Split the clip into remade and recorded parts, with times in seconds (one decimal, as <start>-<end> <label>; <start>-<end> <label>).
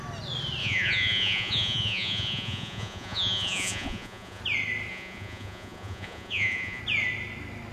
0.0-0.6 recorded; 0.6-4.4 remade; 4.4-4.9 recorded; 4.9-6.8 remade; 6.8-7.7 recorded